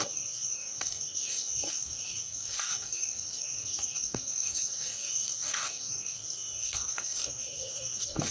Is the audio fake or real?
fake